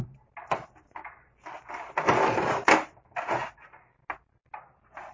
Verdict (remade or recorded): recorded